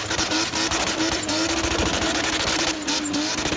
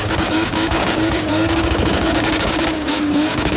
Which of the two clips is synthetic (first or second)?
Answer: second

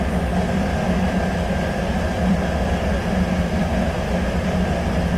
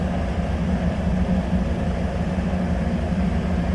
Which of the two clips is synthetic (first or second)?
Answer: first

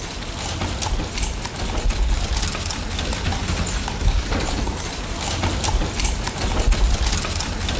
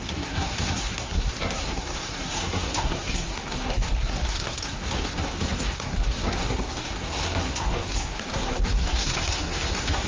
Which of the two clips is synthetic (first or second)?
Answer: second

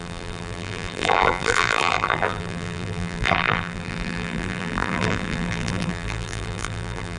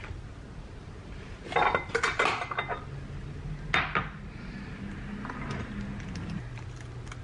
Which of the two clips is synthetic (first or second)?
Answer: first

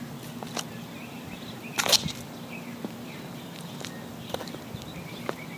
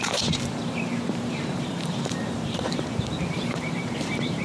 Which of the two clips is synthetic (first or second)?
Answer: second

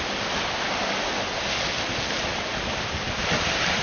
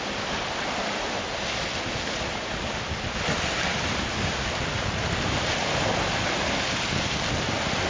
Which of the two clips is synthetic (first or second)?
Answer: second